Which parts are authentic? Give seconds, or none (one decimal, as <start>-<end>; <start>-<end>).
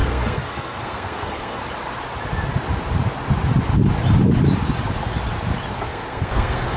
1.6-5.7